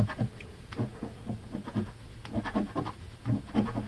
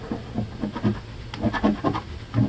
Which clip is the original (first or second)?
second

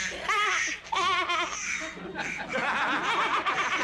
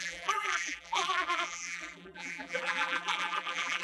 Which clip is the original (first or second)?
first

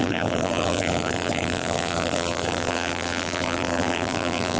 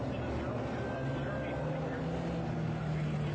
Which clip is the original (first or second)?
second